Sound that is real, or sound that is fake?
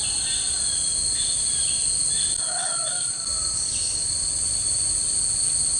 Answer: real